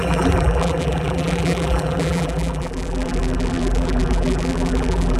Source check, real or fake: fake